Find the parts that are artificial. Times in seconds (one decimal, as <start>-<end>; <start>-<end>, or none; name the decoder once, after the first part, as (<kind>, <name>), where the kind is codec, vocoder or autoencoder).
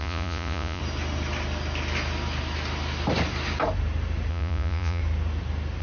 0.0-0.8 (vocoder, Vocos); 4.3-5.0